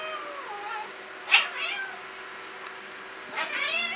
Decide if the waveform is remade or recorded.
recorded